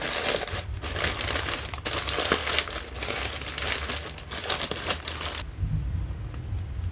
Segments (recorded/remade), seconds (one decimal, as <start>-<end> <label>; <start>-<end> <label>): 0.0-6.9 recorded